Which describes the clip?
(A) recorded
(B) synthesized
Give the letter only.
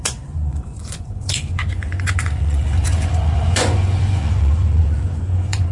B